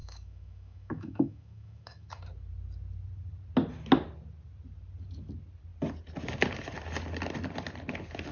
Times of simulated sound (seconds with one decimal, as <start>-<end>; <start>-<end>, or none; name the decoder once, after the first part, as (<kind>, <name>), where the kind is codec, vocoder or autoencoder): 0.0-2.1 (autoencoder, DAC-VAE)